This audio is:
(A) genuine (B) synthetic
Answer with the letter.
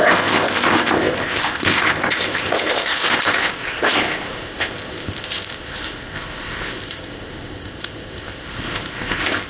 B